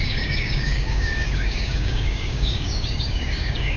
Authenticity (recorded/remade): remade